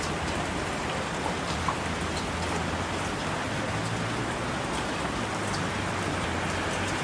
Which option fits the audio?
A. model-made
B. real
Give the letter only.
B